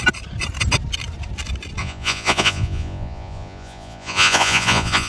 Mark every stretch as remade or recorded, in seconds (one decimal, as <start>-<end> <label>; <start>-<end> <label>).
0.0-1.8 recorded; 1.8-5.1 remade

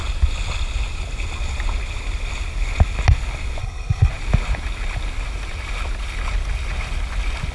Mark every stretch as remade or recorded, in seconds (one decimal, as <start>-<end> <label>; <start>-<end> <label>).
0.0-3.6 recorded; 3.6-4.1 remade; 4.1-7.5 recorded

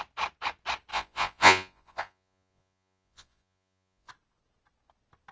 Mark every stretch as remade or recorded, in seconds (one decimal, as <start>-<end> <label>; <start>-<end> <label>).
0.0-0.9 recorded; 0.9-4.1 remade; 4.1-5.3 recorded

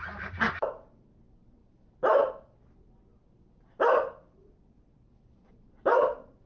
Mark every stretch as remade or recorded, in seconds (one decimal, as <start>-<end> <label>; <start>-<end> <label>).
0.0-1.6 remade; 1.6-5.5 recorded; 5.5-6.5 remade

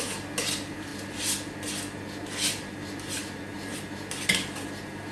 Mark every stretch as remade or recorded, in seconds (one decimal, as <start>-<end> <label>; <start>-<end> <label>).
0.0-5.1 recorded

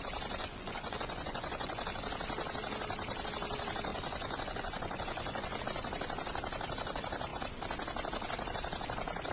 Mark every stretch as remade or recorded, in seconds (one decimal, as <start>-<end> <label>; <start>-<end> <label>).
0.0-0.4 recorded; 0.4-2.0 remade; 2.0-3.9 recorded; 3.9-5.6 remade; 5.6-9.3 recorded